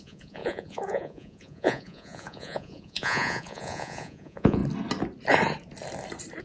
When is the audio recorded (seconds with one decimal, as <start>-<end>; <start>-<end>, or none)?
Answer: 4.6-6.4